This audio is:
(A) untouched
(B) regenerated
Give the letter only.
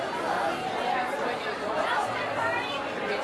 A